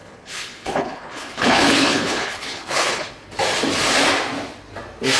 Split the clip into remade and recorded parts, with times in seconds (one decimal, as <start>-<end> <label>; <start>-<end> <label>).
0.0-3.1 remade; 3.1-5.2 recorded